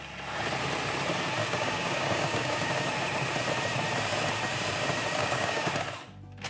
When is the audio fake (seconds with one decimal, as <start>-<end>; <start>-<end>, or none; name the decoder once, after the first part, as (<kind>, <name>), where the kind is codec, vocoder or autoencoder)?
1.4-2.7 (codec, DAC); 5.2-5.7